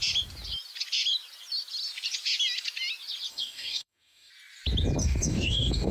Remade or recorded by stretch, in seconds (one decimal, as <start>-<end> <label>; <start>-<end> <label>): 0.0-3.3 recorded; 3.3-4.3 remade; 4.3-5.0 recorded; 5.0-5.9 remade